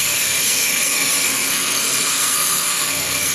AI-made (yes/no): yes